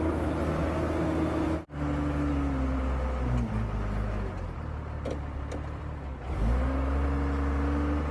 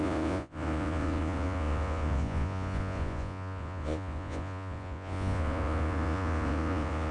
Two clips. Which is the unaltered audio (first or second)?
first